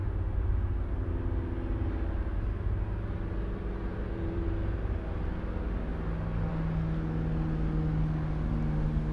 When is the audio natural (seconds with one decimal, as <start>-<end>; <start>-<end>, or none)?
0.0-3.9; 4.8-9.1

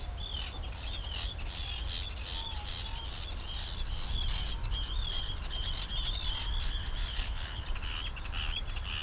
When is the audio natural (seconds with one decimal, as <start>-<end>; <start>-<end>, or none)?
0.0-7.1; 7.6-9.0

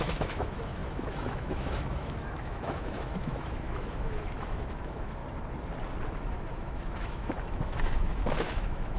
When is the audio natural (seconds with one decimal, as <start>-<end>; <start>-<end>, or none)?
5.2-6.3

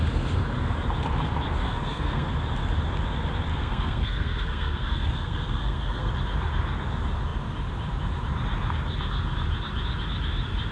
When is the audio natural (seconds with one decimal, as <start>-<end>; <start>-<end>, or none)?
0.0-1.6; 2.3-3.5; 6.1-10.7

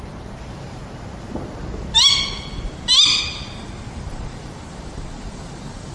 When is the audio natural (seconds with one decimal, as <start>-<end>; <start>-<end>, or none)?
0.8-4.3